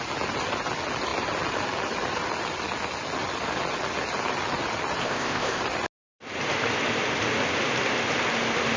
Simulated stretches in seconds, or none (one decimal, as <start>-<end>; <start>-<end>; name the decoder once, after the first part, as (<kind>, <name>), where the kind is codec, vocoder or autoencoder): 5.0-5.6 (codec, ZipCodec)